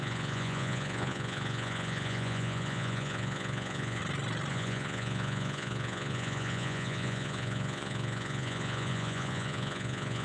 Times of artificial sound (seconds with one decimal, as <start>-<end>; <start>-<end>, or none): 0.0-4.0; 4.5-10.2